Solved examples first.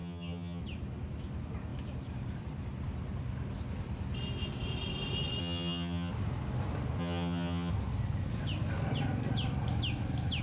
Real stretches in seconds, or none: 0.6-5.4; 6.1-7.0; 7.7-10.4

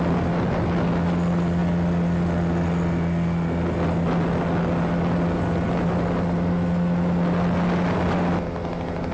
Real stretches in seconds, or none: 0.0-9.1

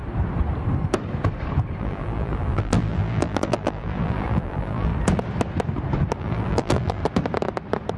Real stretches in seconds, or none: 0.0-1.8; 4.9-6.2; 7.0-8.0

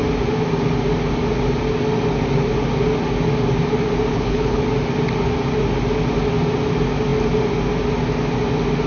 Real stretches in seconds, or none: 0.0-4.1; 4.6-8.9

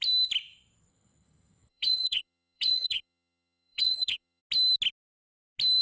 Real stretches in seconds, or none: 0.0-0.9; 4.4-5.8

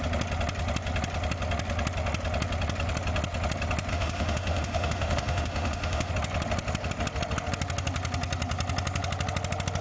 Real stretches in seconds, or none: 0.0-3.9; 6.1-9.8

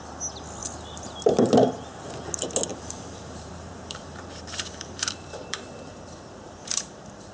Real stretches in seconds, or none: 0.0-2.7